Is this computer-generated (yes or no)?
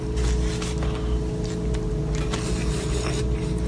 no